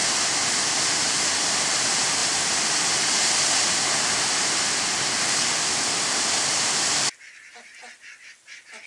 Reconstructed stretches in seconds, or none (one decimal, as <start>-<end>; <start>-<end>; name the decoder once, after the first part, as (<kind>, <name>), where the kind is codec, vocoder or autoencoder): 0.0-2.2 (vocoder, BigVGAN v2); 6.0-8.9